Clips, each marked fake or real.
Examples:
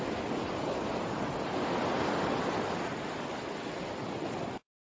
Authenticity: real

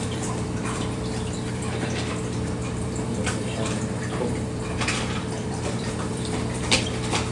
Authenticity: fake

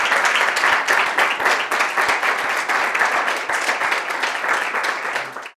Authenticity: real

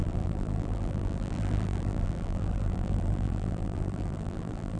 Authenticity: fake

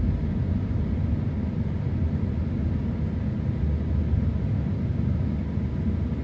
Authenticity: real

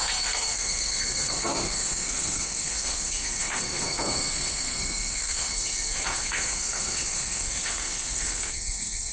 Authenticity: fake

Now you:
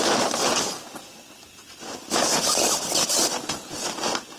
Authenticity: real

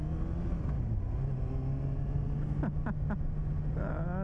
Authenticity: real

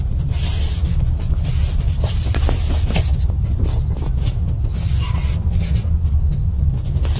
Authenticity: real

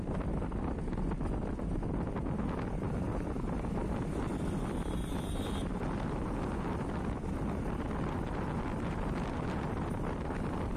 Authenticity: fake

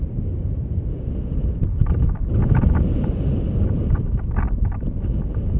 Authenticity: real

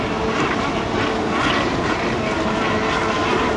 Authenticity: real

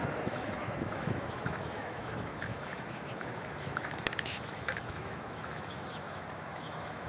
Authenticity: fake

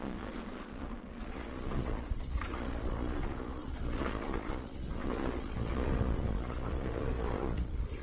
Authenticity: fake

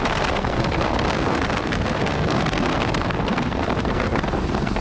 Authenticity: fake